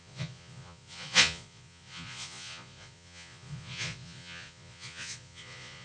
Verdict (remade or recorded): remade